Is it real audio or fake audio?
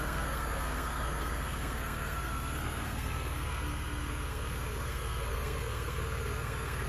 fake